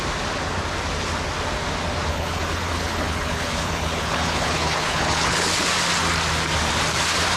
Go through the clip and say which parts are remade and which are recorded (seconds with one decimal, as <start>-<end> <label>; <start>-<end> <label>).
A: 0.0-2.1 recorded; 2.1-5.5 remade; 5.5-7.4 recorded